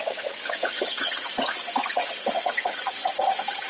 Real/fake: fake